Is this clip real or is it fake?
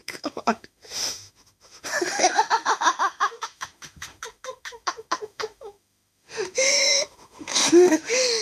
fake